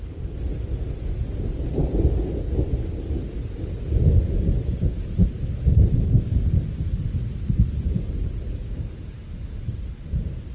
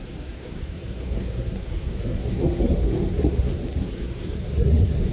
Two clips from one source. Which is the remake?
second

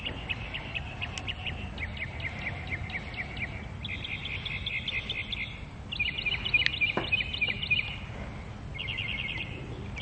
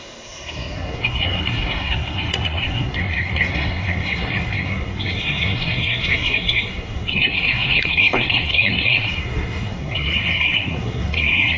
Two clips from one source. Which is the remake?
second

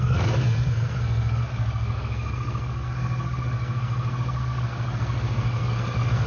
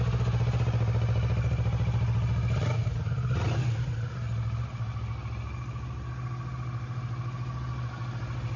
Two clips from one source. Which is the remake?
first